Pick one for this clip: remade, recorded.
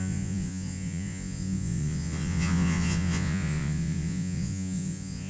remade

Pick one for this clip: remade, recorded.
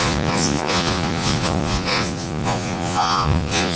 remade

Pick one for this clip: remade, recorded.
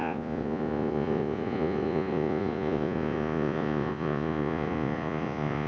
remade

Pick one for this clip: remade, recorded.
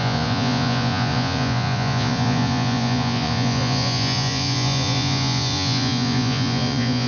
remade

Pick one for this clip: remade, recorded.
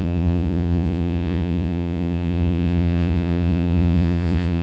remade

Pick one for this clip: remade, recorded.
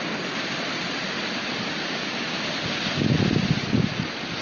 recorded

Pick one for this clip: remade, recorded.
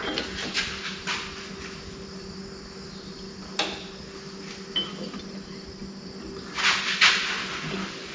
recorded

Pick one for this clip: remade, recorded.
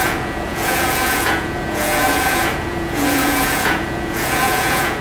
remade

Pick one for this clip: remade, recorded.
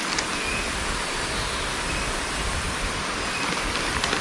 recorded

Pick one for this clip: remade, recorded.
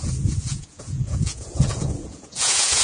remade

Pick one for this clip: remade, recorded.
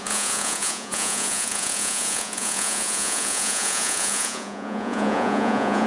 remade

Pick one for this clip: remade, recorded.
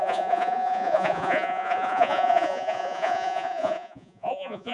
remade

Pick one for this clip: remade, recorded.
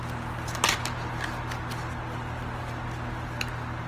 recorded